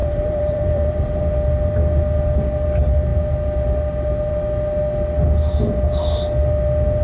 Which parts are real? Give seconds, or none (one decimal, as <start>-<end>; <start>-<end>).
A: 1.1-7.0